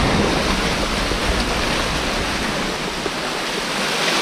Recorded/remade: recorded